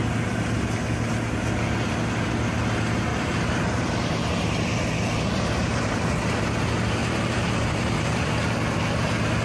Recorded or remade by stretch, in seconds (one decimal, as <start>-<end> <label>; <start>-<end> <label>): 0.0-3.1 recorded; 3.1-6.0 remade; 6.0-7.0 recorded; 7.0-8.3 remade; 8.3-9.4 recorded

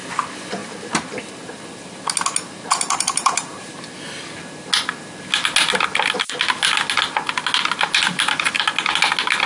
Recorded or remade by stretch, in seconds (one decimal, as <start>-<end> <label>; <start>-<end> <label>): 0.0-2.7 recorded; 2.7-3.7 remade; 3.7-9.5 recorded

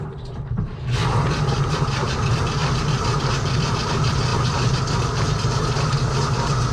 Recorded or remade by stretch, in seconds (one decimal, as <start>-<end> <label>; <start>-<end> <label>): 0.0-1.0 recorded; 1.0-2.1 remade; 2.1-2.6 recorded; 2.6-3.3 remade; 3.3-4.3 recorded; 4.3-5.2 remade; 5.2-6.7 recorded